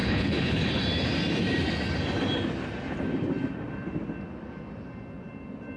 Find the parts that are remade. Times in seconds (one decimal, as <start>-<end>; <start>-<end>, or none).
0.0-0.8